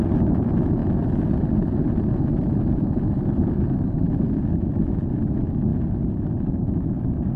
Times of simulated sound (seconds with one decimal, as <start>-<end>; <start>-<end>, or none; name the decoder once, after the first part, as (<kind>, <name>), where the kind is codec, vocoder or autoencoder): 0.8-4.4 (vocoder, BigVGAN v2)